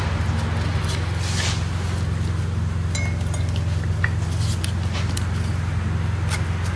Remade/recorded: recorded